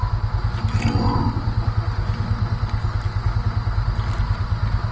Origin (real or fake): real